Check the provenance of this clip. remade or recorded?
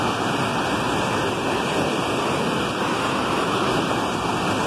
recorded